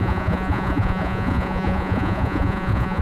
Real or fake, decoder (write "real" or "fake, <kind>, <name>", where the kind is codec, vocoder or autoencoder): fake, vocoder, Vocos